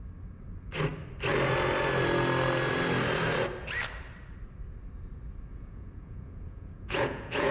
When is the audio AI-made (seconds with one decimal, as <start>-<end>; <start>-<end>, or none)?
5.5-7.5